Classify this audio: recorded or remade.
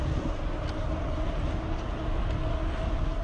recorded